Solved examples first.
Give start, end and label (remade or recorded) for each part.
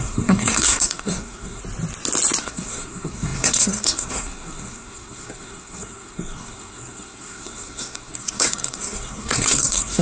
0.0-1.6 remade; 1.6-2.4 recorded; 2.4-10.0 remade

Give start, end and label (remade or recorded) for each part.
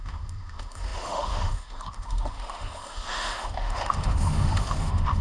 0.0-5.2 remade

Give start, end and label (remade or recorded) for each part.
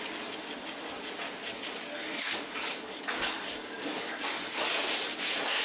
0.0-1.4 recorded; 1.4-4.8 remade; 4.8-5.6 recorded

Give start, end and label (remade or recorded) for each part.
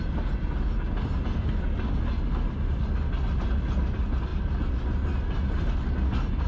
0.0-6.5 recorded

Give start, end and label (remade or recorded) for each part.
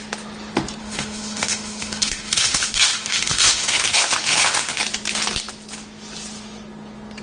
0.0-0.8 recorded; 0.8-4.8 remade; 4.8-7.2 recorded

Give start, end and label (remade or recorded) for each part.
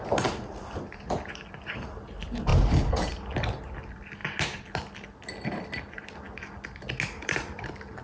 0.0-8.0 recorded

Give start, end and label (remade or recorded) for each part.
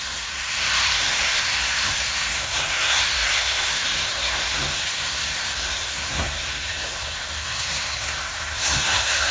0.0-9.3 remade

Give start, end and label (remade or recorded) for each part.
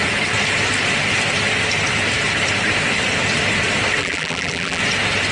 0.0-4.0 recorded; 4.0-4.8 remade; 4.8-5.3 recorded